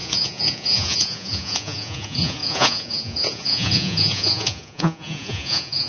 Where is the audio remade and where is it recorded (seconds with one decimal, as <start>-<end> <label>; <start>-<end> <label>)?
0.0-5.9 remade